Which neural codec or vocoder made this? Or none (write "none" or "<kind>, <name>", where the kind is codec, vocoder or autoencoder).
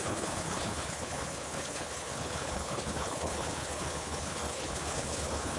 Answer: codec, HILCodec